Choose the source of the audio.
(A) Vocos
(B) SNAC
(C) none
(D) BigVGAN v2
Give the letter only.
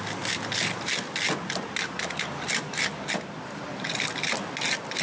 C